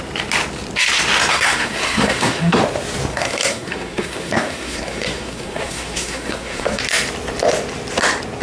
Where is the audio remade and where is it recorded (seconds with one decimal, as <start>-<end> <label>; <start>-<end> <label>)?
0.0-1.3 recorded; 1.3-2.6 remade; 2.6-3.1 recorded; 3.1-6.8 remade; 6.8-8.4 recorded